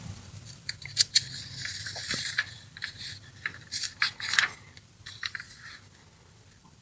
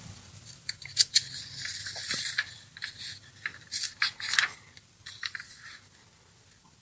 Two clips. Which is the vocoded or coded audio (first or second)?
first